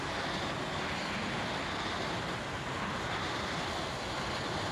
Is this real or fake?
real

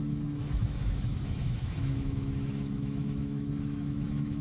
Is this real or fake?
fake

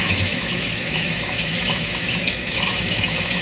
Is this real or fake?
fake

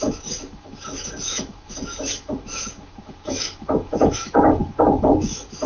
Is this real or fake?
fake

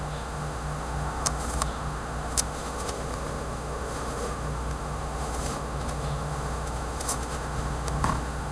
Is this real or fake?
fake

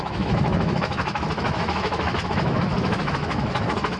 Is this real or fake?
fake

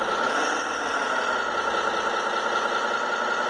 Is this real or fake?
real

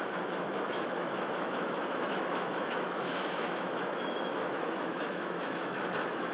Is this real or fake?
fake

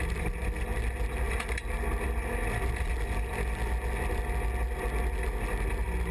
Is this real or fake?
real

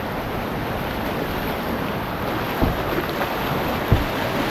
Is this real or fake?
real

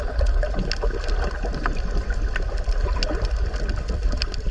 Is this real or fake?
real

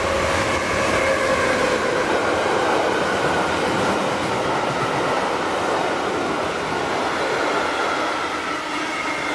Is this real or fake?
real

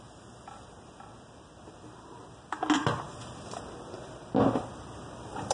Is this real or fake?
real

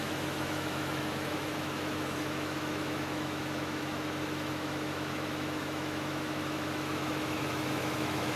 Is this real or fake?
fake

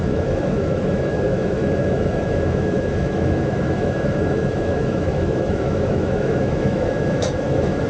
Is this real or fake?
fake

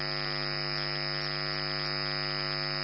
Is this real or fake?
real